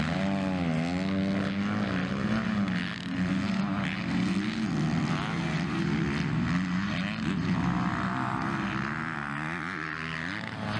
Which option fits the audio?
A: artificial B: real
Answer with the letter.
B